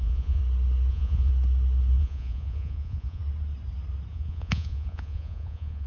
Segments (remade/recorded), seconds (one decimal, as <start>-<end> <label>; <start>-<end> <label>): 0.0-0.4 remade; 0.4-0.9 recorded; 0.9-1.3 remade; 1.3-2.0 recorded; 2.0-3.2 remade; 3.2-4.1 recorded; 4.1-5.9 remade